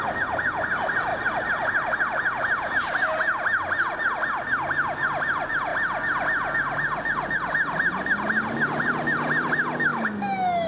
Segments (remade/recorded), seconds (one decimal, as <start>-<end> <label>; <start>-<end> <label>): 0.0-9.9 recorded; 9.9-10.7 remade